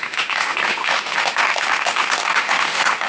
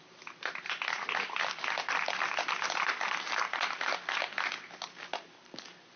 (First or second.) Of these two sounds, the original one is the second